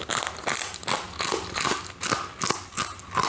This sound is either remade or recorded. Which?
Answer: recorded